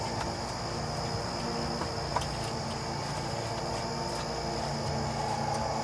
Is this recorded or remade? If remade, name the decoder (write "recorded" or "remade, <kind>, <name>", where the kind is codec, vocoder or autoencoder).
recorded